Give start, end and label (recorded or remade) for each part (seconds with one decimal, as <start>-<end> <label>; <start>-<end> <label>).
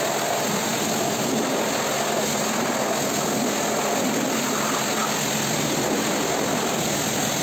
0.0-7.4 recorded